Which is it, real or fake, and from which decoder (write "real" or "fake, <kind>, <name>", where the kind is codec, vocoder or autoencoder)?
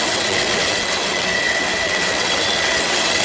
fake, vocoder, WaveNeXt